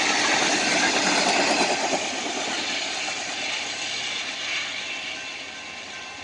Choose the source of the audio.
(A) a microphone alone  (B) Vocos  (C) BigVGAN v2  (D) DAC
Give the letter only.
A